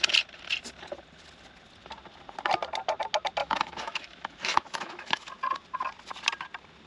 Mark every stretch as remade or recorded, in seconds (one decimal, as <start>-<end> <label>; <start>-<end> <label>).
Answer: 0.0-3.4 recorded; 3.4-5.3 remade; 5.3-6.9 recorded